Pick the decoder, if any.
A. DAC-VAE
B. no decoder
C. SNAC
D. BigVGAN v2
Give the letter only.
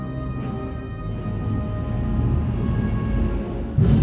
B